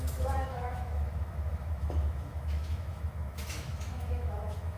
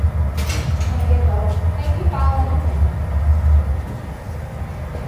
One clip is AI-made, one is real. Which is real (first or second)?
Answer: second